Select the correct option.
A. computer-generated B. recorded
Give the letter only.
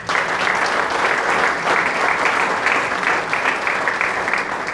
B